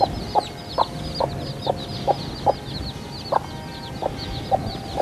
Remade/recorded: recorded